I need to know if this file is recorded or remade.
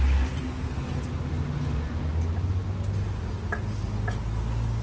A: recorded